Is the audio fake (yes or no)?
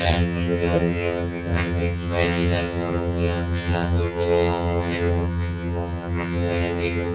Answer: yes